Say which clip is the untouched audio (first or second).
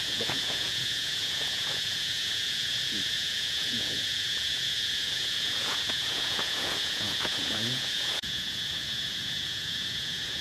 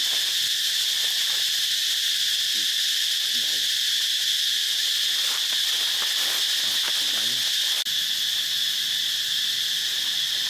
second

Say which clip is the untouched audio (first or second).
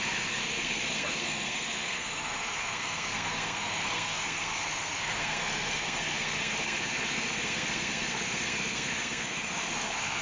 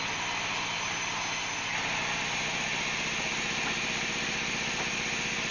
second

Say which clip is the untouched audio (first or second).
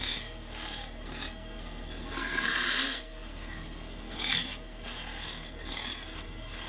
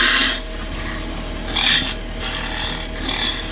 second